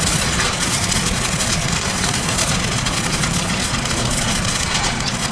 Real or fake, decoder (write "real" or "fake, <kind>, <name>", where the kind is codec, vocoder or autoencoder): fake, vocoder, Vocos